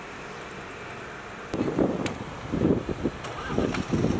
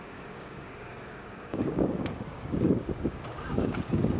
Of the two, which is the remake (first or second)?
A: second